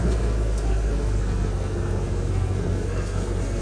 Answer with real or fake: fake